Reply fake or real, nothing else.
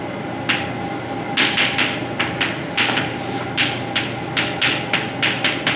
real